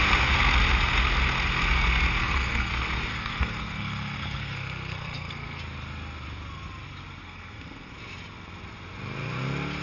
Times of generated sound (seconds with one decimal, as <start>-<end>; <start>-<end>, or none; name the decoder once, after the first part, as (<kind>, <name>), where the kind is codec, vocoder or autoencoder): 2.2-2.7 (codec, SNAC); 3.1-5.6; 7.2-7.9